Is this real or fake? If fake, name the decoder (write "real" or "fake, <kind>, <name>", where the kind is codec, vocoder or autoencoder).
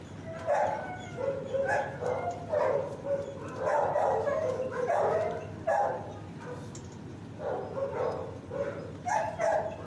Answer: real